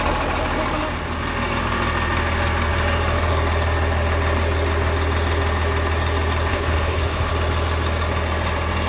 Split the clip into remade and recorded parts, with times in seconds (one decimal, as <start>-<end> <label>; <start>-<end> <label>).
0.0-6.5 recorded; 6.5-7.3 remade; 7.3-8.9 recorded